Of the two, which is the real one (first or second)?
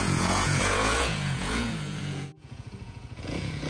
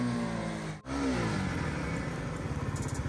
second